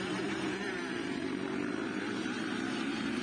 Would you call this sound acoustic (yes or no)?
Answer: no